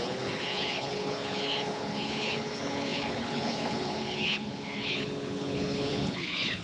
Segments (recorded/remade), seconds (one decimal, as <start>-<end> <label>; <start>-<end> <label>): 0.0-6.6 remade